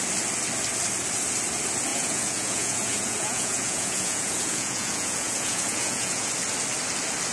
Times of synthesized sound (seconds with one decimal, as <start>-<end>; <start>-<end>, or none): 1.9-6.3